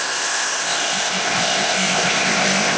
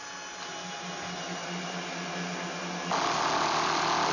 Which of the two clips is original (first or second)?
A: second